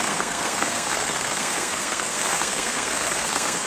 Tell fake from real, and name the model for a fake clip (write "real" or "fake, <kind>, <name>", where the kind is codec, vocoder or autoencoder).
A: fake, codec, SNAC